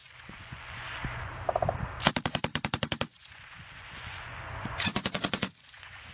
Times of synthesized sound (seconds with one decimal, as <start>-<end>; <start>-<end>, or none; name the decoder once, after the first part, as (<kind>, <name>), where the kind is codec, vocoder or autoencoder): 0.0-1.3 (vocoder, Vocos); 2.5-6.1